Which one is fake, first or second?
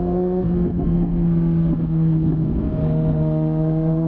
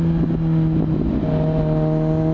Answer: first